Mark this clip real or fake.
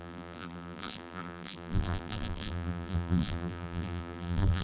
fake